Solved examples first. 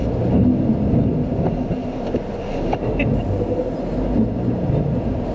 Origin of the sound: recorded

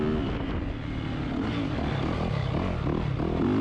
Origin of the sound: recorded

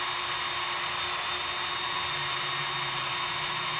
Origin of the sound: recorded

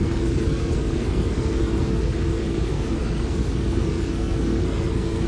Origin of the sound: remade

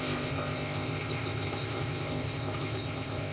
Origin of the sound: remade